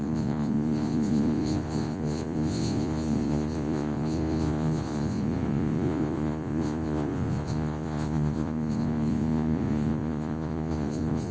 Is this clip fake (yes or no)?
yes